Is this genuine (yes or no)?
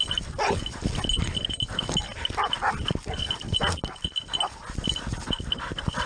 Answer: yes